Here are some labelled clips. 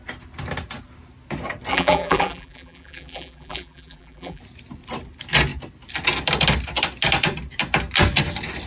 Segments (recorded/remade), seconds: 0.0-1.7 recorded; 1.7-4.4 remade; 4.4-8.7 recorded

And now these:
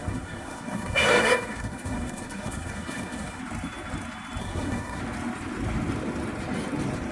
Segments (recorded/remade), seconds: 0.0-3.4 remade; 3.4-4.4 recorded; 4.4-5.0 remade; 5.0-7.1 recorded

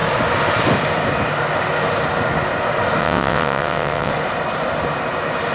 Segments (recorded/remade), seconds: 0.0-3.0 recorded; 3.0-4.1 remade; 4.1-5.5 recorded

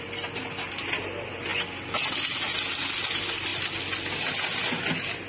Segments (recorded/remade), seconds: 0.0-5.3 recorded

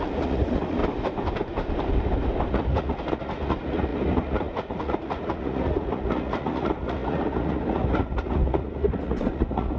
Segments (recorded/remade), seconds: 0.0-0.8 remade; 0.8-2.5 recorded; 2.5-9.8 remade